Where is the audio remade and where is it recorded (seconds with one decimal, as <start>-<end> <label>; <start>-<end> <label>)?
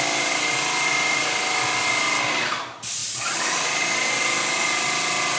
0.0-5.4 recorded